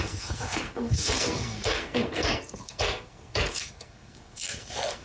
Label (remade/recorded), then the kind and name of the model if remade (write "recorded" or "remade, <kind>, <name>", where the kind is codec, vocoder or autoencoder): remade, codec, SNAC